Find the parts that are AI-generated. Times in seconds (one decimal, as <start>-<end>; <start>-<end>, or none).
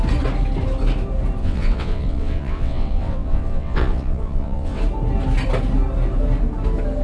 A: 1.4-4.8